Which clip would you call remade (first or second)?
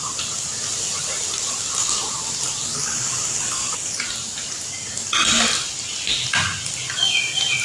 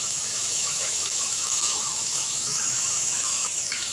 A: second